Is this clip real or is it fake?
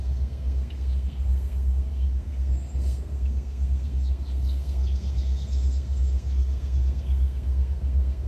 fake